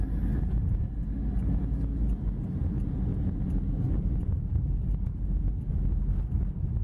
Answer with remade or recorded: recorded